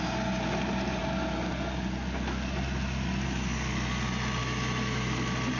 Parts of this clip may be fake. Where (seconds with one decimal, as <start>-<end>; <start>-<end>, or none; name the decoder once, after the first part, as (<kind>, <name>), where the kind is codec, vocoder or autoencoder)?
4.4-5.1 (autoencoder, DAC-VAE)

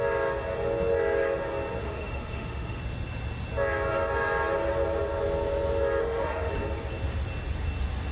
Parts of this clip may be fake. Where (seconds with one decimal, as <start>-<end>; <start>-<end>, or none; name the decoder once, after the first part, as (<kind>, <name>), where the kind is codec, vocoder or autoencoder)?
1.8-2.8 (autoencoder, DAC-VAE); 6.0-6.5

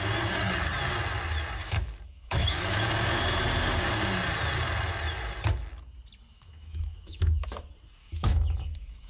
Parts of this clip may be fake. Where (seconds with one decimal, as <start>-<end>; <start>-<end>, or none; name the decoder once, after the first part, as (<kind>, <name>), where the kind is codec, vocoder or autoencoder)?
1.6-2.9 (autoencoder, DAC-VAE); 6.3-7.6; 8.0-9.1

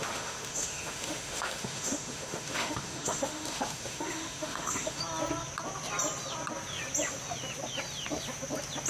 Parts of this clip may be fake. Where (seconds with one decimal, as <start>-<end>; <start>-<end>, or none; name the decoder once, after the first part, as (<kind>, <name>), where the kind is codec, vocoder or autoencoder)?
0.0-5.0 (autoencoder, DAC-VAE)

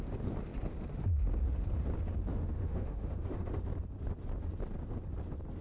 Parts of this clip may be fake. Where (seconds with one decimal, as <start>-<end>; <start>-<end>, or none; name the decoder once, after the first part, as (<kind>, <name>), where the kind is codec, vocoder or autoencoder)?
2.3-3.6 (autoencoder, DAC-VAE)